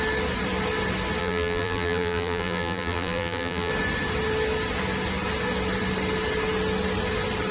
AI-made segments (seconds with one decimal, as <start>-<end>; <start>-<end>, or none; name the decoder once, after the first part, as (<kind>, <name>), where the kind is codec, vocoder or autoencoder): 1.2-3.7 (vocoder, BigVGAN v2)